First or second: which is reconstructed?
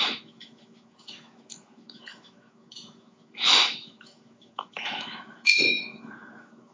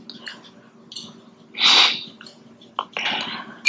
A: first